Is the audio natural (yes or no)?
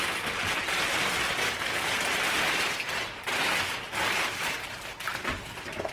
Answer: yes